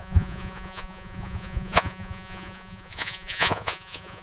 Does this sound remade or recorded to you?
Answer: remade